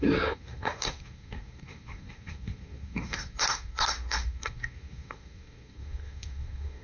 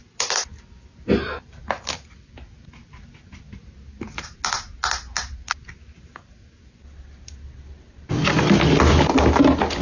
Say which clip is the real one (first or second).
second